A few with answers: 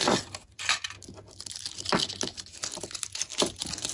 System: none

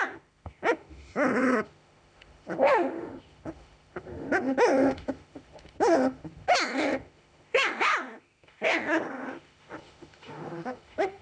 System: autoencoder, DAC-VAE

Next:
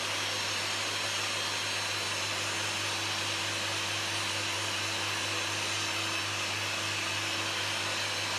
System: none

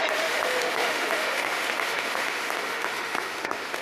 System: autoencoder, DAC-VAE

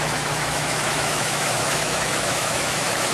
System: autoencoder, DAC-VAE